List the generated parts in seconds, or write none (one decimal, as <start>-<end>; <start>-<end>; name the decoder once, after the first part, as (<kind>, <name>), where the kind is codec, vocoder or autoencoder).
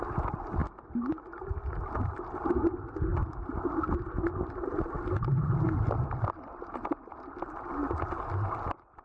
none